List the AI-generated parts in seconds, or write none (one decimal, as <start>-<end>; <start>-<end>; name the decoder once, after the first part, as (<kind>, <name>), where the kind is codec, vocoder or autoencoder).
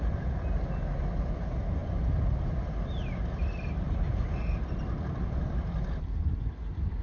none